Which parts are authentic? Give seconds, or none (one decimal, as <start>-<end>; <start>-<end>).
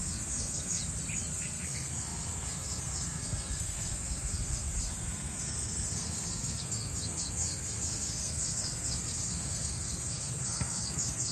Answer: 0.8-1.3